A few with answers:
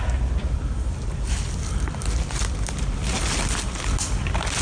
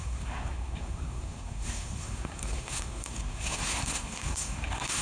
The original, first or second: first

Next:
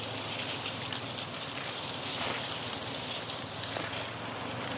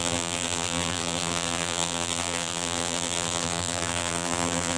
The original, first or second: first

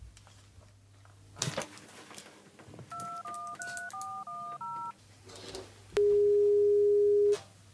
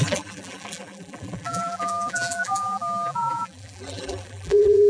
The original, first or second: first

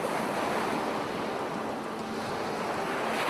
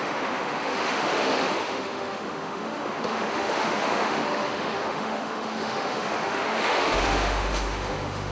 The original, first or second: first